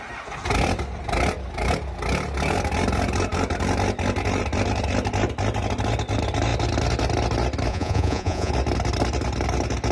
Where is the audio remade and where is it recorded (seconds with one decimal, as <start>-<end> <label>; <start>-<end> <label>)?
0.0-7.7 recorded; 7.7-8.5 remade; 8.5-9.9 recorded